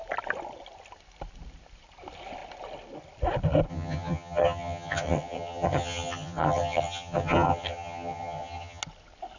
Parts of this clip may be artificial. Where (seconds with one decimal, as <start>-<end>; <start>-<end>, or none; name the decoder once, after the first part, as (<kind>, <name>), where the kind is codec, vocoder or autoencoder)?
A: 3.7-8.8 (vocoder, HiFi-GAN)